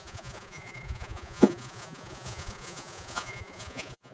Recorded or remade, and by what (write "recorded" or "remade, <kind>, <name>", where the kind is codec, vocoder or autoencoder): remade, vocoder, Vocos